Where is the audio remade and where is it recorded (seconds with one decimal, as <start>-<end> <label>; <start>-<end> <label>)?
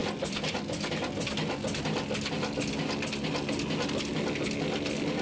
0.0-5.2 recorded